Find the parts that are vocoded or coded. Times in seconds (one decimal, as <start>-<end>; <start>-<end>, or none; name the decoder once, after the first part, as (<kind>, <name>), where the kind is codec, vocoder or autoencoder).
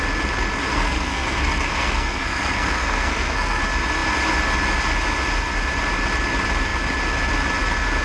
0.7-3.6 (codec, SNAC)